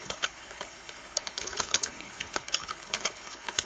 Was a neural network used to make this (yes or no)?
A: yes